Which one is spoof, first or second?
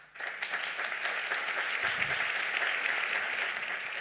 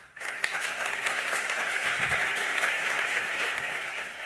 second